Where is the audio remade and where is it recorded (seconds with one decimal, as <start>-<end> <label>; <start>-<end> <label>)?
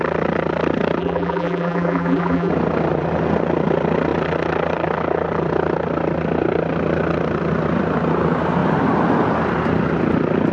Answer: 0.0-1.0 recorded; 1.0-2.5 remade; 2.5-10.5 recorded